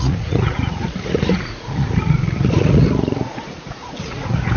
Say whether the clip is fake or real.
fake